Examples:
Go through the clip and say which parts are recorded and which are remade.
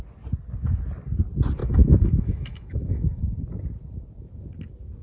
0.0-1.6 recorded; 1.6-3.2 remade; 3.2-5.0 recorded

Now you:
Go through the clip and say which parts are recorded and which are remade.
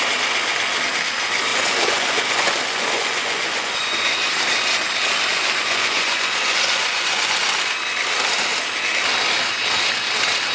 0.0-1.5 recorded; 1.5-4.3 remade; 4.3-5.3 recorded; 5.3-7.4 remade; 7.4-10.5 recorded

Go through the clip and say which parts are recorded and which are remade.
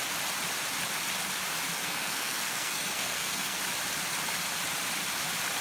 0.0-1.8 recorded; 1.8-3.6 remade; 3.6-5.6 recorded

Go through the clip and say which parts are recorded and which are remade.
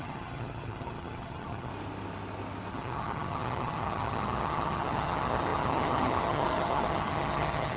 0.0-1.7 remade; 1.7-2.7 recorded; 2.7-7.8 remade